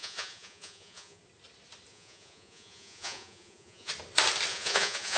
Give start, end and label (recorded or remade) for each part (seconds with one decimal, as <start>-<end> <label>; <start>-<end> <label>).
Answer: 0.0-1.2 remade; 1.2-1.9 recorded; 1.9-3.9 remade; 3.9-4.5 recorded; 4.5-5.2 remade